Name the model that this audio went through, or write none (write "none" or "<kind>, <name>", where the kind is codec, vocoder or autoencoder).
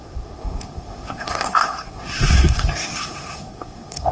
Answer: codec, SNAC